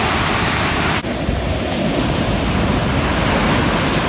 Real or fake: real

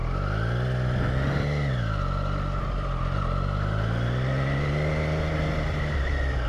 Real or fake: real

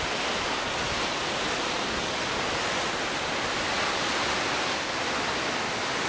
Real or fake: real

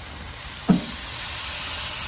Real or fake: real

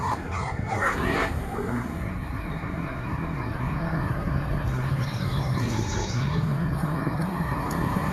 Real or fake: fake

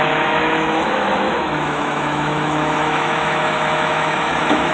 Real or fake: fake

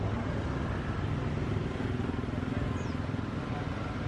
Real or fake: real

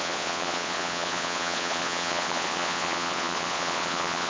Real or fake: fake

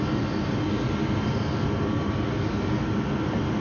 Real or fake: real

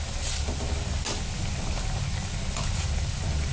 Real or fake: real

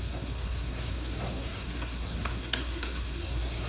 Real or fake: fake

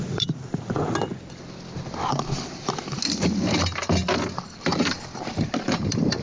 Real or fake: real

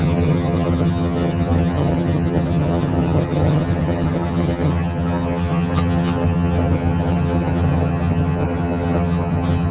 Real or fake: fake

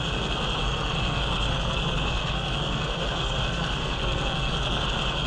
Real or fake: fake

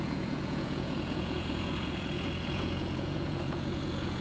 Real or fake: fake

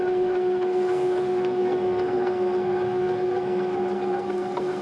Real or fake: fake